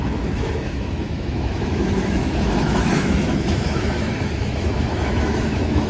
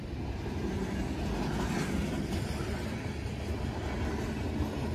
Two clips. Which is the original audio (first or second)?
second